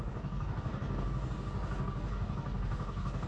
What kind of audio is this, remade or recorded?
remade